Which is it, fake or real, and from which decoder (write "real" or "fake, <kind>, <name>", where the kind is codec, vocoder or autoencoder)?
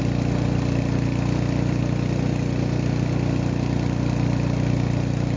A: real